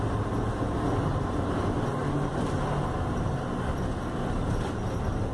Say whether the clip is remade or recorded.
recorded